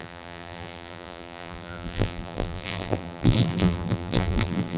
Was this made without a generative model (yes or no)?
no